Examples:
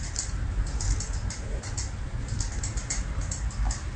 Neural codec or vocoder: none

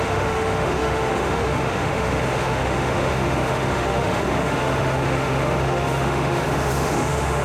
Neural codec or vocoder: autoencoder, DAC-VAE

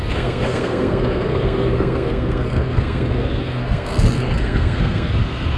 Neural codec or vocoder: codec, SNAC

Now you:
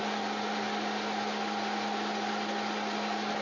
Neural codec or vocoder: none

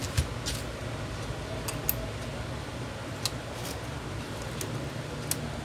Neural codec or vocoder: none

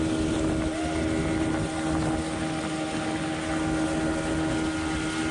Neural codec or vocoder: none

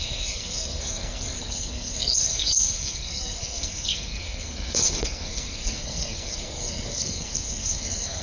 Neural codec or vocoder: codec, SNAC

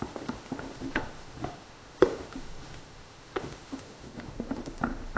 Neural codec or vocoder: autoencoder, DAC-VAE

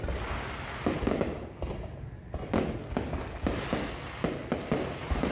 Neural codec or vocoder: none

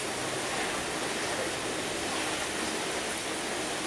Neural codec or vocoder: none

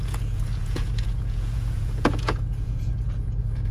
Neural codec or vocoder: vocoder, Vocos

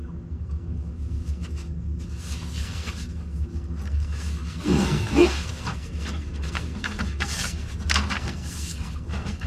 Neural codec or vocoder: codec, SNAC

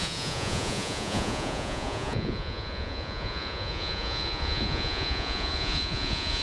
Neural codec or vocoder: vocoder, Vocos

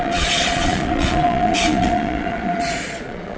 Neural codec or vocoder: vocoder, Vocos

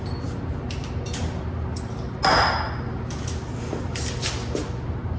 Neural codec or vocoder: none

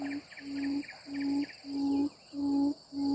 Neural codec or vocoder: none